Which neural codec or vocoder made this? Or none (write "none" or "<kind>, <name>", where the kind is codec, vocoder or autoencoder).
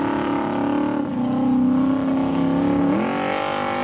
none